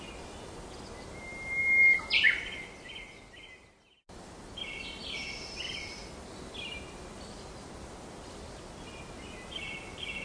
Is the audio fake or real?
real